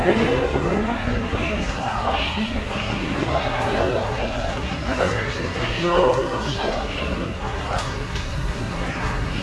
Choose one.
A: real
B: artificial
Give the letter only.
B